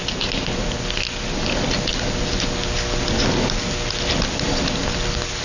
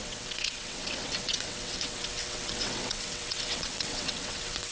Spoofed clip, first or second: second